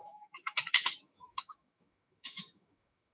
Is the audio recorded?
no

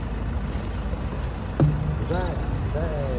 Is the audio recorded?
yes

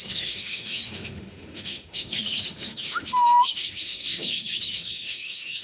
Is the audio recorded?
no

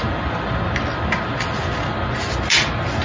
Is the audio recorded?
yes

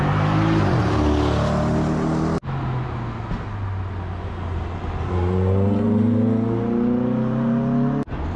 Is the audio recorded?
yes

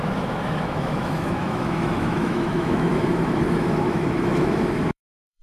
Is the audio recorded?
no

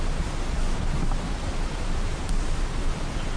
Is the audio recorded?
yes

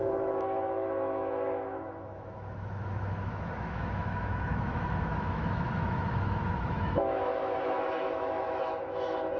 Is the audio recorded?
no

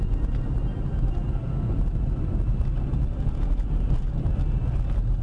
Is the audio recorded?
yes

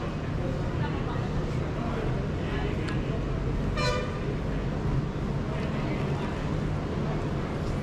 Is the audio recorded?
yes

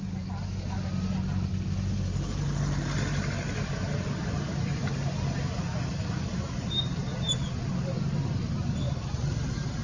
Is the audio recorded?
yes